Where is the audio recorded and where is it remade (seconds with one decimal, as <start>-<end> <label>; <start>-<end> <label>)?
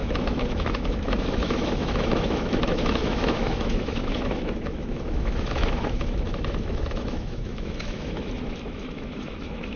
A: 0.0-9.8 remade